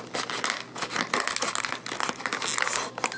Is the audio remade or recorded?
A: recorded